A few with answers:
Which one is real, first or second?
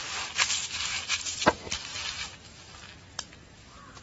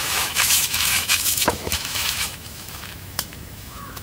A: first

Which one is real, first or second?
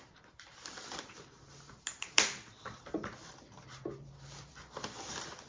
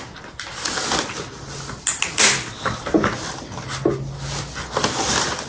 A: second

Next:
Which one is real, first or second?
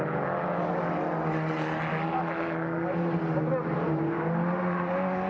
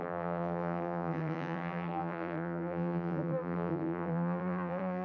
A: first